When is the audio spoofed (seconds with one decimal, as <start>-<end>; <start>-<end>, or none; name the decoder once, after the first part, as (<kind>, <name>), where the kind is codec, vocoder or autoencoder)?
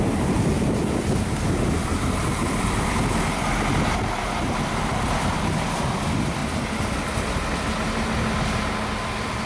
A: 0.0-6.4 (vocoder, BigVGAN v2); 9.0-9.5